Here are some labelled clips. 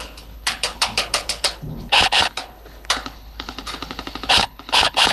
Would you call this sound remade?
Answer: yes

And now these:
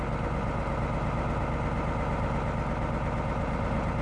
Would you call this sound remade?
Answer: no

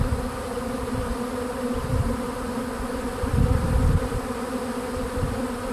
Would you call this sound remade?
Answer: yes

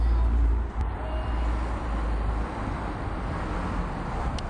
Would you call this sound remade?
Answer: no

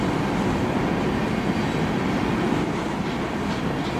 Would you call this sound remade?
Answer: no